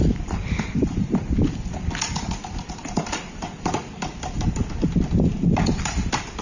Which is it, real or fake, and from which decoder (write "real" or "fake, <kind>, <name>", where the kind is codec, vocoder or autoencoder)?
real